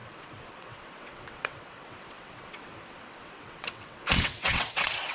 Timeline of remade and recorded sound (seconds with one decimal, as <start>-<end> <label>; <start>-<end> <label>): 0.0-5.1 remade